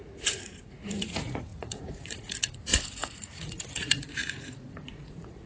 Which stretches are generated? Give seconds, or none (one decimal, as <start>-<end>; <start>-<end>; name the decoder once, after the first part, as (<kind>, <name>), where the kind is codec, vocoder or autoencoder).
0.0-5.5 (vocoder, Vocos)